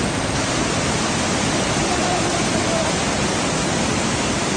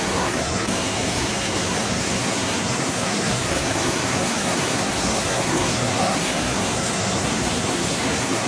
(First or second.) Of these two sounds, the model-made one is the second